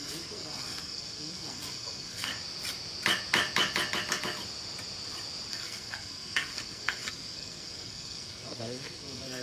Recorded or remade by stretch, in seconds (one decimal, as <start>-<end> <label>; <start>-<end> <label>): 0.0-2.3 remade; 2.3-5.5 recorded; 5.5-9.4 remade